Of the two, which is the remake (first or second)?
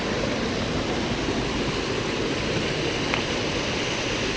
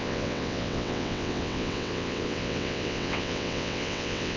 second